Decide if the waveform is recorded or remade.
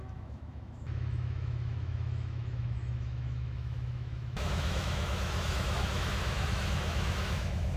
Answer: remade